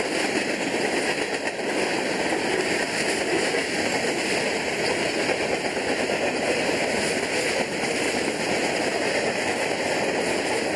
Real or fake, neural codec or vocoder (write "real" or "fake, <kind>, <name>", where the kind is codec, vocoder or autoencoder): real